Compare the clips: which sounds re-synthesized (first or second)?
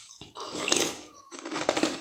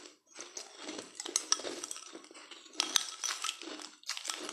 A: first